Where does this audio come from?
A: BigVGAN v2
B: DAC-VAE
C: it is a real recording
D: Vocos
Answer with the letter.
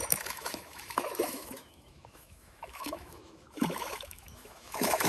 B